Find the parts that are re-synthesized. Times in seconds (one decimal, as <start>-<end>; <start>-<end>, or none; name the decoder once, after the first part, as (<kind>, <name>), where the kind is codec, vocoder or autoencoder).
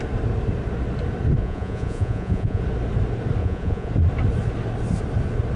1.4-2.6 (vocoder, Vocos); 3.4-3.9